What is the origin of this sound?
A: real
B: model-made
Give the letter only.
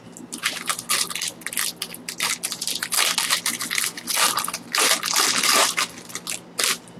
A